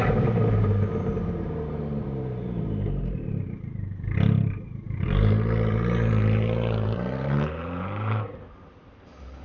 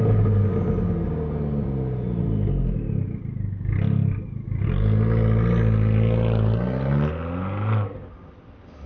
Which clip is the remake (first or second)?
first